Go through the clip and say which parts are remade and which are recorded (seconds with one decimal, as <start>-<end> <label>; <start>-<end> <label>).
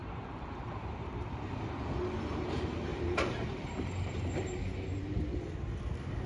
0.0-1.1 remade; 1.1-2.9 recorded; 2.9-4.5 remade; 4.5-6.3 recorded